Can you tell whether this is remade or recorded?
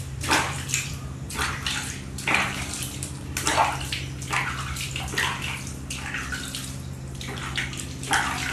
recorded